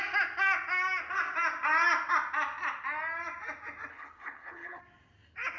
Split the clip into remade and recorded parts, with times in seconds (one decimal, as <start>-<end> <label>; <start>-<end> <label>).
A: 0.0-3.9 recorded; 3.9-4.8 remade; 4.8-5.6 recorded